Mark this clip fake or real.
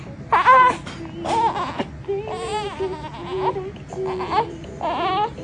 real